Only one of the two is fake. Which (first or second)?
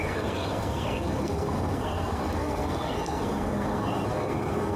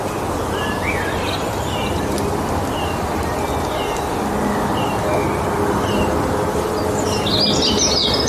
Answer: first